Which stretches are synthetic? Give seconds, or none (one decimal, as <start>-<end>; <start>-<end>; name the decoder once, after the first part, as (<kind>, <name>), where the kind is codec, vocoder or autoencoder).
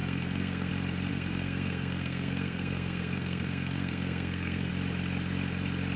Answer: 0.0-0.7 (codec, SNAC); 1.1-4.7